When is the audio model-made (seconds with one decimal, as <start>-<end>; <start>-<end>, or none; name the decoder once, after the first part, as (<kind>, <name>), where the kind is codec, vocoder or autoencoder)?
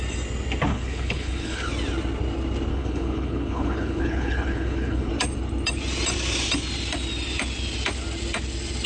0.7-1.7 (codec, HILCodec); 2.7-5.1